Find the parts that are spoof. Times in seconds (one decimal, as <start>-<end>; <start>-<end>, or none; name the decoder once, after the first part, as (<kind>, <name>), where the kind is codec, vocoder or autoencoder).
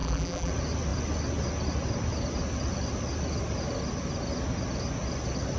0.0-0.5 (vocoder, BigVGAN v2)